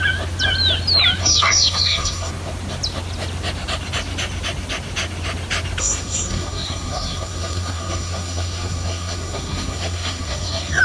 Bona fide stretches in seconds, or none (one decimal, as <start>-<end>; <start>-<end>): 0.0-1.2; 2.3-5.8